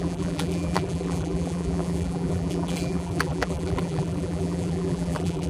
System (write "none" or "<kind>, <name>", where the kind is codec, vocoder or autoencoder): vocoder, BigVGAN v2